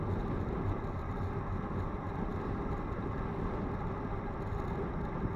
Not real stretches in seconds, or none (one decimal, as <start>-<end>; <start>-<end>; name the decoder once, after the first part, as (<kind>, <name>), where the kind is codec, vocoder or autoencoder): none